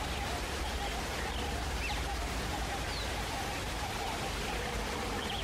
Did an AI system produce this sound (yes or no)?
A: no